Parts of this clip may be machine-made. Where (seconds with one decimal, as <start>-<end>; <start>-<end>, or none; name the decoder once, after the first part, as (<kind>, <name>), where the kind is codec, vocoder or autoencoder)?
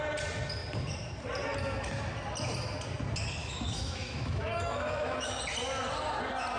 3.4-5.3 (autoencoder, DAC-VAE)